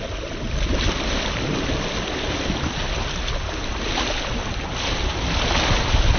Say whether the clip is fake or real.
real